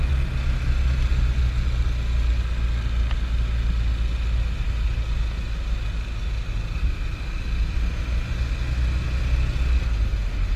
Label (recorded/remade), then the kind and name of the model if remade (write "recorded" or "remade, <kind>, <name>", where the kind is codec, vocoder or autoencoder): recorded